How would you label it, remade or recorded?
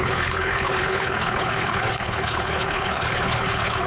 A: remade